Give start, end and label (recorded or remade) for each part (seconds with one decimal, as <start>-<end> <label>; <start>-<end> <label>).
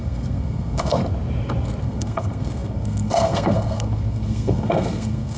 0.0-1.0 remade; 1.0-1.8 recorded; 1.8-5.4 remade